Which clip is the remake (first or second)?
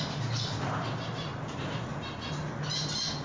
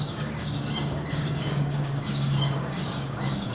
second